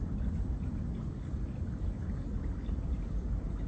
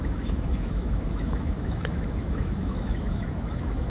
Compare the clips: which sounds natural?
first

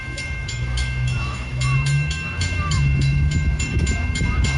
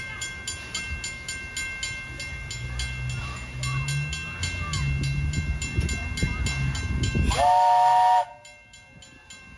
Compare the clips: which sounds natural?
second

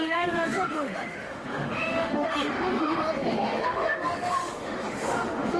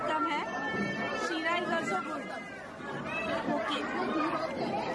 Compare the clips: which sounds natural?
second